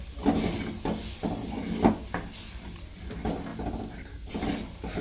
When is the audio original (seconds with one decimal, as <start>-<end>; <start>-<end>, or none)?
0.0-5.0